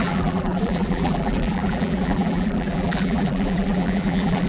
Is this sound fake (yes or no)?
yes